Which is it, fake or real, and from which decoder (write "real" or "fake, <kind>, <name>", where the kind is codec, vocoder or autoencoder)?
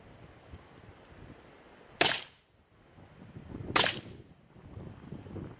real